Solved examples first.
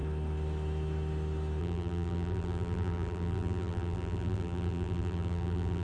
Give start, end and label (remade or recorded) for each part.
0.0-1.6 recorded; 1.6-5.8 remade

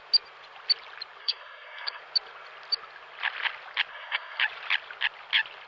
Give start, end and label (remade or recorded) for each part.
0.0-1.2 recorded; 1.2-2.0 remade; 2.0-3.9 recorded; 3.9-4.4 remade; 4.4-5.7 recorded

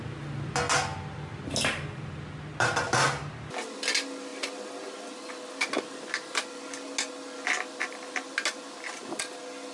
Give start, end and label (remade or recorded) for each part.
0.0-9.7 recorded